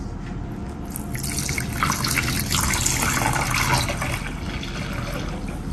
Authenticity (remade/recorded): recorded